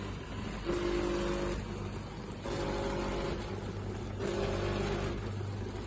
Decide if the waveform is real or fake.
real